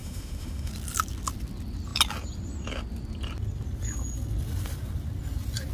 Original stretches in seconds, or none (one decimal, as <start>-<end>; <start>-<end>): 0.7-5.7